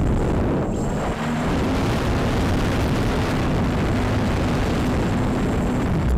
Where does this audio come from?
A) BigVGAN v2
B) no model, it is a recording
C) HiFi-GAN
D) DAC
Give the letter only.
B